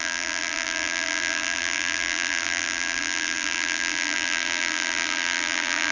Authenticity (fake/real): fake